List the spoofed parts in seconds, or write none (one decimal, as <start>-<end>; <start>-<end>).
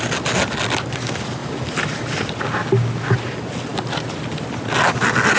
1.4-2.4